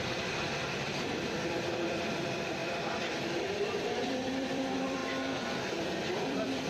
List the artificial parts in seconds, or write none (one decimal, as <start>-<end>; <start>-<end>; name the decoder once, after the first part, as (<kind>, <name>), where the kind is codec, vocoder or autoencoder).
0.0-5.0 (vocoder, BigVGAN v2); 5.7-6.7